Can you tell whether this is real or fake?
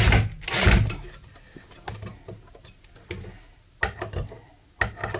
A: real